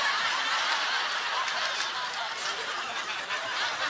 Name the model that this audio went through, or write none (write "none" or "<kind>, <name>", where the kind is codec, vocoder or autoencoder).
none